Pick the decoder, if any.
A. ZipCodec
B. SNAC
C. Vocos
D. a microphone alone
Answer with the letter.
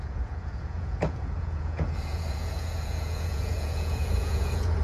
C